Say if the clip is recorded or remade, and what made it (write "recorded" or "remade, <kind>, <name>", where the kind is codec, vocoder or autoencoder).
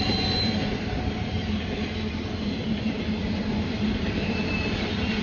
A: remade, vocoder, BigVGAN v2